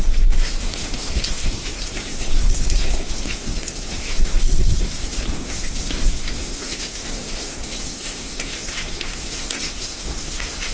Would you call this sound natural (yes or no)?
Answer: no